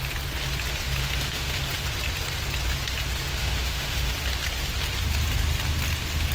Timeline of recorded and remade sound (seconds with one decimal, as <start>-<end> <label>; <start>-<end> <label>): 0.0-1.0 recorded; 1.0-1.6 remade; 1.6-3.4 recorded; 3.4-4.1 remade; 4.1-6.3 recorded